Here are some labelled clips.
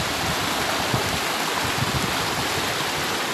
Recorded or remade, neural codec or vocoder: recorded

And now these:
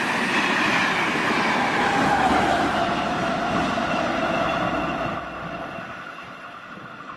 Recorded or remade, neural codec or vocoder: recorded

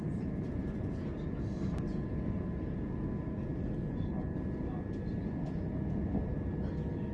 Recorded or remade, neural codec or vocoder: recorded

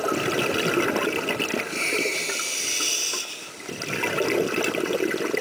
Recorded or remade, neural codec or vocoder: recorded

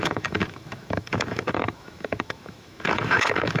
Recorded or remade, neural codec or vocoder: remade, autoencoder, DAC-VAE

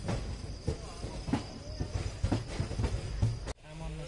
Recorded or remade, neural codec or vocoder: recorded